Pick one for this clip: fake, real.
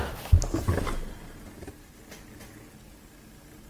real